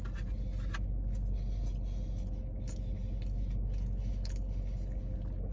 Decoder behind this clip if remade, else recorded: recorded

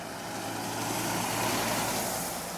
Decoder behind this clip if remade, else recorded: recorded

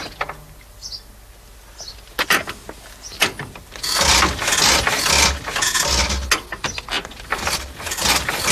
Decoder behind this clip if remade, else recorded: recorded